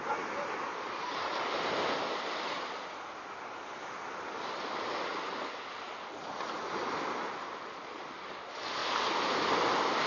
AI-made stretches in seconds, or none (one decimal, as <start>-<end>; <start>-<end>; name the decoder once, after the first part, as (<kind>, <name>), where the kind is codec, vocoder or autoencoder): none